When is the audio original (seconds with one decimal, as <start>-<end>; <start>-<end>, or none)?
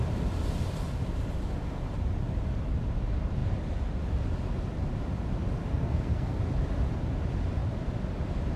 0.0-5.7; 6.4-8.6